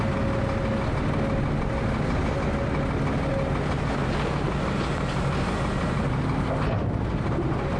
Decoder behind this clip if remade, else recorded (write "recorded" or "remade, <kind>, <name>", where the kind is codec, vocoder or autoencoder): recorded